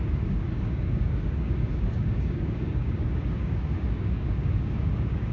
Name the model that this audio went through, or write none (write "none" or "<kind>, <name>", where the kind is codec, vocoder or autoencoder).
codec, DAC